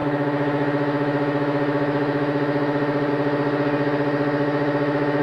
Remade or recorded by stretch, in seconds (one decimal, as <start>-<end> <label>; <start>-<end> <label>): 0.0-3.1 remade; 3.1-4.4 recorded; 4.4-5.2 remade